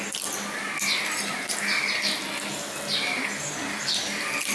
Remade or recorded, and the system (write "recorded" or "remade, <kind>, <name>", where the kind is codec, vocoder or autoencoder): recorded